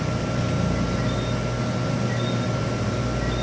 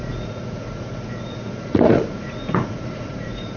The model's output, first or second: second